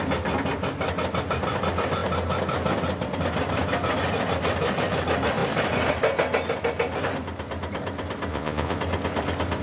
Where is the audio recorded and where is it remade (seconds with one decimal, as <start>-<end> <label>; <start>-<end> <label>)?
0.0-8.3 recorded; 8.3-8.8 remade; 8.8-9.6 recorded